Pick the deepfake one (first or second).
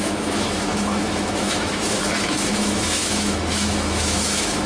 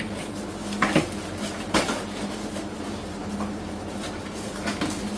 first